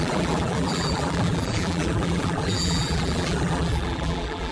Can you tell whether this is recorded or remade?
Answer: remade